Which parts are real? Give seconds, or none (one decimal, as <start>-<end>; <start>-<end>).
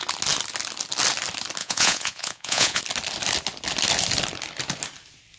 0.0-1.6; 2.8-5.4